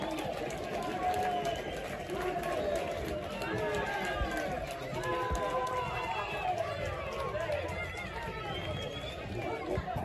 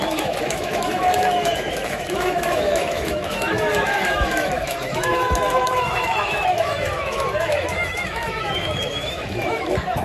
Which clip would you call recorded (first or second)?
first